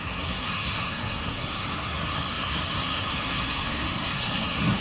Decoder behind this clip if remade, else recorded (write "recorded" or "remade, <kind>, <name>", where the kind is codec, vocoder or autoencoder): remade, codec, SNAC